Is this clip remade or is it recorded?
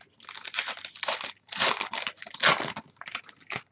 recorded